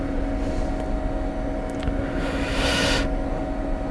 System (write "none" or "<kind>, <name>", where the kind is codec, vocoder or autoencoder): none